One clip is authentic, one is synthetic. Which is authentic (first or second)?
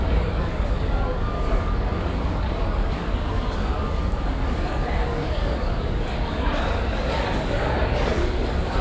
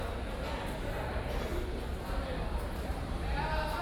second